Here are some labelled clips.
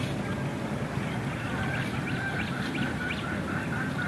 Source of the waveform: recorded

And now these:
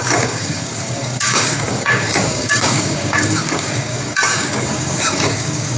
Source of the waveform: remade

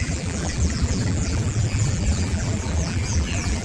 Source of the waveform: remade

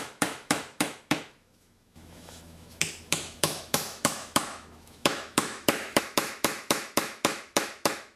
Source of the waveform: remade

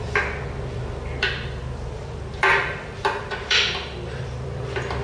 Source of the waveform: remade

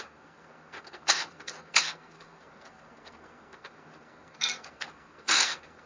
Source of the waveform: remade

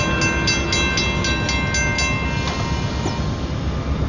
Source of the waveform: recorded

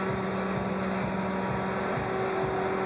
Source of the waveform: recorded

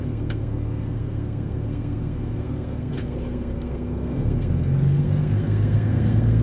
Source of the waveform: remade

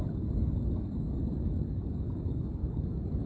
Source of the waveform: remade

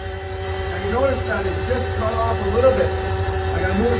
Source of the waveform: remade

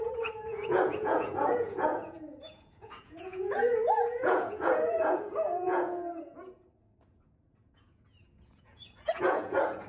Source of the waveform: remade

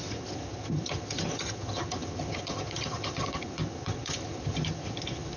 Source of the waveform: remade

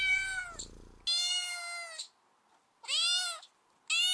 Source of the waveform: recorded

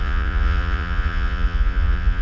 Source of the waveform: remade